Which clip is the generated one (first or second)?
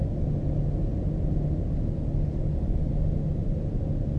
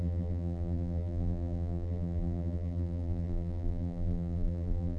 second